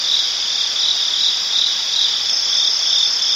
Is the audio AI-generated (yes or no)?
no